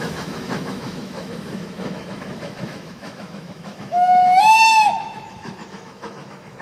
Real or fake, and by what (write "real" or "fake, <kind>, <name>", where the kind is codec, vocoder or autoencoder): fake, autoencoder, DAC-VAE